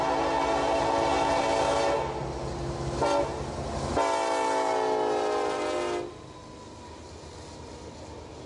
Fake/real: real